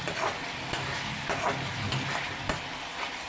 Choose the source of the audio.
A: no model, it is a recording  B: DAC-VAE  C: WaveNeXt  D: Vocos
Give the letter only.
A